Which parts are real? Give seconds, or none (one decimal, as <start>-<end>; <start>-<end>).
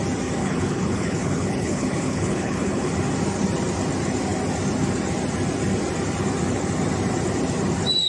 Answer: 0.0-0.4; 2.9-8.1